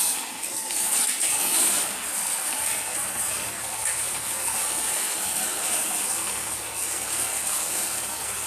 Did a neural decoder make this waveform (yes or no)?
yes